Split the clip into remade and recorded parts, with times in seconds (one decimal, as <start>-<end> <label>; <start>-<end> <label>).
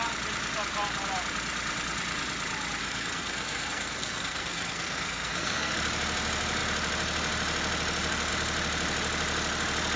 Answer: 0.0-2.8 recorded; 2.8-5.7 remade; 5.7-10.0 recorded